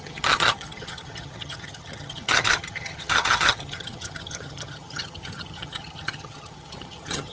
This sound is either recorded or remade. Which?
remade